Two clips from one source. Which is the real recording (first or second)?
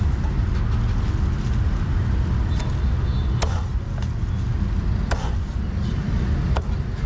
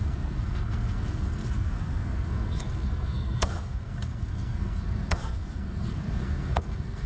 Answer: first